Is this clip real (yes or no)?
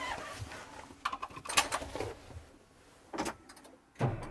yes